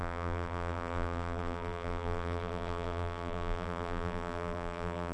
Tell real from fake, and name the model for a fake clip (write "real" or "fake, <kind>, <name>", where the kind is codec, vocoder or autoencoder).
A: fake, vocoder, BigVGAN v2